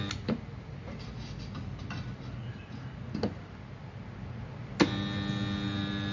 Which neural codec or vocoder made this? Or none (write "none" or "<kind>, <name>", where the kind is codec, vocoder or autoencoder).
none